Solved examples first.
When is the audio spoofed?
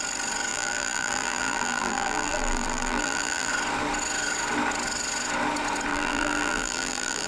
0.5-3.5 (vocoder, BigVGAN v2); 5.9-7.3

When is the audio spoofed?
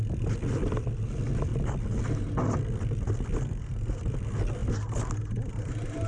0.0-1.5 (vocoder, BigVGAN v2); 2.3-4.6; 5.5-6.1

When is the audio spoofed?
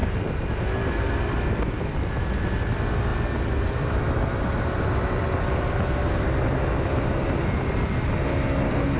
0.0-0.5 (vocoder, BigVGAN v2)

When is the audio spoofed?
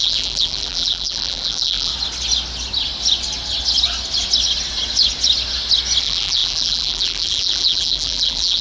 0.0-1.9 (vocoder, BigVGAN v2); 6.0-8.6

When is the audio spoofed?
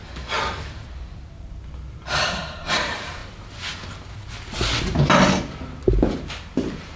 1.3-3.2 (vocoder, BigVGAN v2); 6.3-7.0